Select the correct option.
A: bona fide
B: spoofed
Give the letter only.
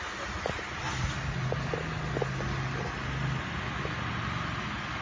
A